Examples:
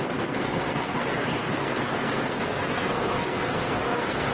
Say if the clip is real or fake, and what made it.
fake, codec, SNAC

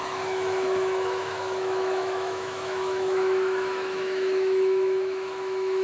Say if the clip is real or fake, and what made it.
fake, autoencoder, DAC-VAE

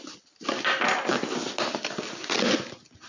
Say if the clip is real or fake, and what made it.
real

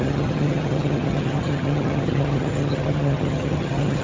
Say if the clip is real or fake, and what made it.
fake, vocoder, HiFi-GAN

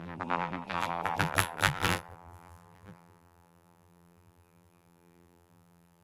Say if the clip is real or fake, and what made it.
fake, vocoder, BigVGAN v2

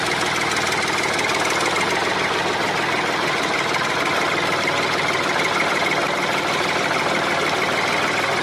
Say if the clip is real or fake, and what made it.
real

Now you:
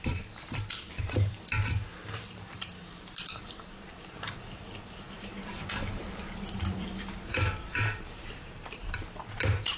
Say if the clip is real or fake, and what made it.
fake, vocoder, BigVGAN v2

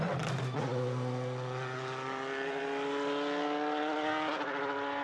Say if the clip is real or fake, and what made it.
real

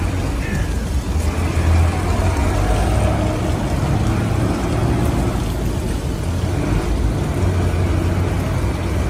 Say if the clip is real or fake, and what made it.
real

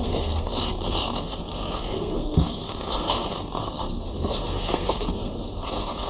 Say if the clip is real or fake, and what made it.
fake, codec, SNAC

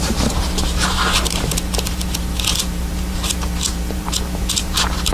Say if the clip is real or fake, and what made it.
fake, vocoder, BigVGAN v2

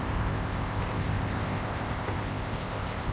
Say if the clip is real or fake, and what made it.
fake, codec, ZipCodec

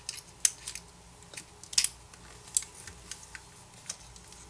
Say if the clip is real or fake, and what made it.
real